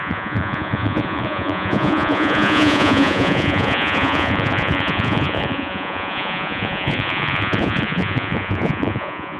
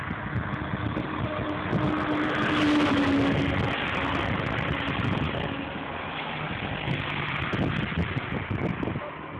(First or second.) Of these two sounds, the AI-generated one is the first